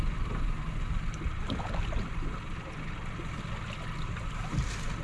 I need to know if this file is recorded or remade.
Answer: recorded